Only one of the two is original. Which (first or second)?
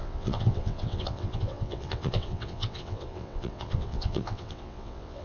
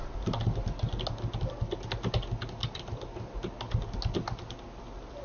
second